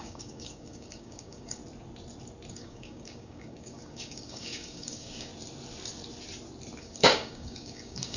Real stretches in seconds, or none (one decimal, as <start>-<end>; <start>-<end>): 1.6-2.5; 5.3-6.8